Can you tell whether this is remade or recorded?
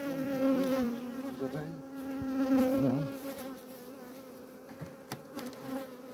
remade